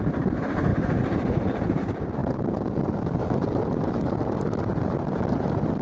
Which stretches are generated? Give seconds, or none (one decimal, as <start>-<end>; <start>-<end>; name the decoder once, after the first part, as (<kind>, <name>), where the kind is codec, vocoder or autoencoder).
0.0-5.8 (vocoder, BigVGAN v2)